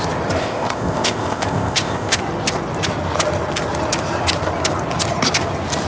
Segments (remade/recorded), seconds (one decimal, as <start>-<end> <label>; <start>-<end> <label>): 0.0-0.4 recorded; 0.4-2.2 remade; 2.2-5.9 recorded